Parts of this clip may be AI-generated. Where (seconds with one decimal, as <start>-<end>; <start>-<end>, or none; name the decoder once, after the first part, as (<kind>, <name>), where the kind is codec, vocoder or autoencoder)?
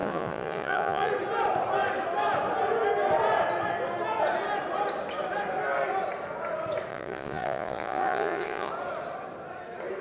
0.0-1.1 (vocoder, Vocos); 6.9-8.7